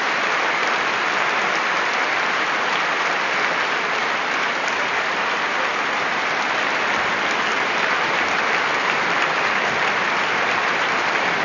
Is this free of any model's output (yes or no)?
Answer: no